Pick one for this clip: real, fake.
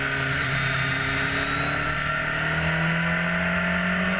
real